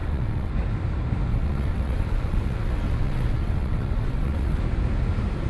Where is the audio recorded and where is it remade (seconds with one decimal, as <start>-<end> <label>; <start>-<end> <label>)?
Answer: 0.0-0.5 remade; 0.5-1.3 recorded; 1.3-4.6 remade; 4.6-5.5 recorded